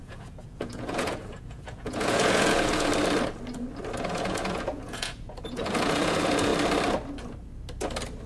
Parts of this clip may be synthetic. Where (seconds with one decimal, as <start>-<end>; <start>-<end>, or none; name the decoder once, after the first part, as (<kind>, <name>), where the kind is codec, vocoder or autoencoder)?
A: 0.0-2.9 (vocoder, Vocos); 4.0-6.5